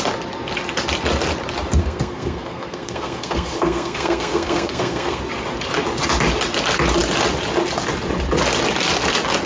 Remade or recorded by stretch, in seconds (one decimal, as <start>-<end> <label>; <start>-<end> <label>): 0.0-1.8 recorded; 1.8-5.2 remade; 5.2-9.5 recorded